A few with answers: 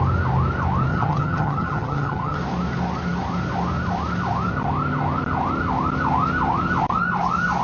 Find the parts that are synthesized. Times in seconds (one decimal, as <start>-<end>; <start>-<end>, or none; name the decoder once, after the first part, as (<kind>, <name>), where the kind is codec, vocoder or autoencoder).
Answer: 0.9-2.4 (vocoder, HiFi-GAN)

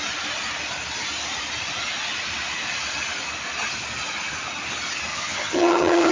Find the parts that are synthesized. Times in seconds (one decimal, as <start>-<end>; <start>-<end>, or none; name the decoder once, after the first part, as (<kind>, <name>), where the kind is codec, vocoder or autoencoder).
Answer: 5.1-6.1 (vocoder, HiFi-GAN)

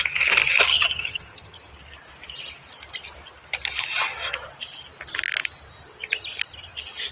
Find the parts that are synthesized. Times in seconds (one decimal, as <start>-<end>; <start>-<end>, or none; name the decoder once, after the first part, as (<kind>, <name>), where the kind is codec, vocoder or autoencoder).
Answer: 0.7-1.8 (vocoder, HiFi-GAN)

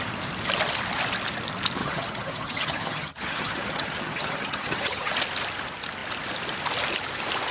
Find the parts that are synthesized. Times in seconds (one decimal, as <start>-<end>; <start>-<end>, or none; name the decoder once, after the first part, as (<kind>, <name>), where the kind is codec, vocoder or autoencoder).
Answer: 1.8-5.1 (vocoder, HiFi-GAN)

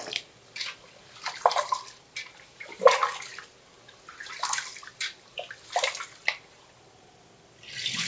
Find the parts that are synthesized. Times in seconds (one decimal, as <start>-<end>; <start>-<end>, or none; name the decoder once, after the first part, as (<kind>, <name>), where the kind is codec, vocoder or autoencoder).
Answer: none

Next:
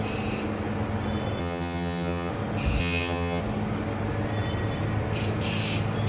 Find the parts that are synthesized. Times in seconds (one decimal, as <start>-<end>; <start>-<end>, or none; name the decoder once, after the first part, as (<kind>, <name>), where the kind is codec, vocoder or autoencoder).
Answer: 1.4-2.3 (vocoder, HiFi-GAN); 2.8-3.4

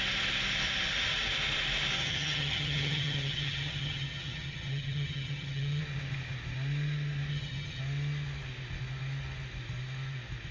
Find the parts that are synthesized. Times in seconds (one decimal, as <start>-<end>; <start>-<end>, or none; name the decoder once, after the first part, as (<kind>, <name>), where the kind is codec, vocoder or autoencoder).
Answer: 2.0-5.8 (vocoder, HiFi-GAN); 7.3-7.8